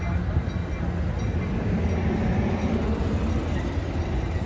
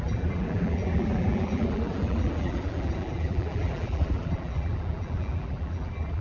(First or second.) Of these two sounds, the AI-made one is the second